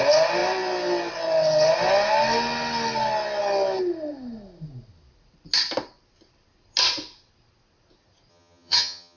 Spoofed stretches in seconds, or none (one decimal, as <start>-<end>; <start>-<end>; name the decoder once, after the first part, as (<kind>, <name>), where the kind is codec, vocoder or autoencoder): 8.3-9.2 (vocoder, HiFi-GAN)